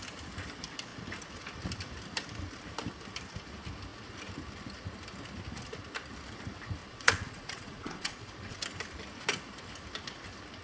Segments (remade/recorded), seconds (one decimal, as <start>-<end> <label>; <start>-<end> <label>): 0.0-6.8 recorded; 6.8-8.6 remade; 8.6-10.6 recorded